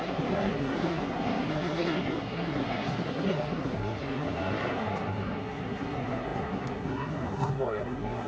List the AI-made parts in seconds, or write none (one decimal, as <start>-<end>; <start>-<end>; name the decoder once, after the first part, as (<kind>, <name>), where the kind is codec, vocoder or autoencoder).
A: 0.0-8.3 (codec, SNAC)